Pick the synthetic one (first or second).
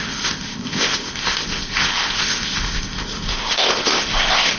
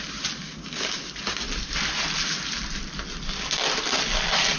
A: first